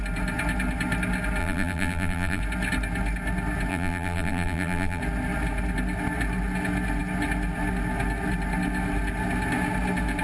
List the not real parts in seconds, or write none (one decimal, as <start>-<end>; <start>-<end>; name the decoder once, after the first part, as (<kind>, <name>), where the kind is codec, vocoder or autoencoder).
1.4-2.4 (vocoder, BigVGAN v2); 3.7-5.0